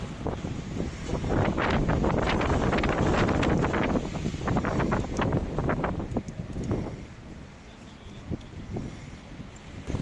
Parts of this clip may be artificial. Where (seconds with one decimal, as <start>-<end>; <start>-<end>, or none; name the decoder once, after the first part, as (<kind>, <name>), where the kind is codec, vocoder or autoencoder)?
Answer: none